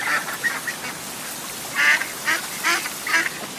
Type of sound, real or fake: real